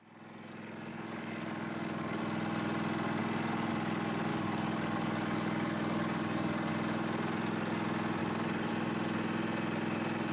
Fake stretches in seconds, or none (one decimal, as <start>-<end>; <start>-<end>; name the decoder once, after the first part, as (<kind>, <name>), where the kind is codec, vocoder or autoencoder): 0.9-2.2 (codec, DAC); 4.3-6.7; 8.2-8.7